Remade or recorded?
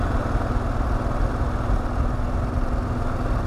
recorded